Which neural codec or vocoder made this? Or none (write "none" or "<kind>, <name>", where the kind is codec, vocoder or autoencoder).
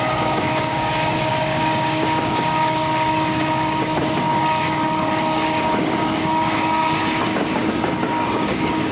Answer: codec, DAC